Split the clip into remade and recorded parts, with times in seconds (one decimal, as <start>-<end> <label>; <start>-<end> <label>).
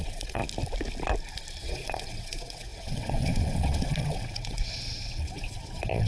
0.0-0.4 remade; 0.4-1.6 recorded; 1.6-6.1 remade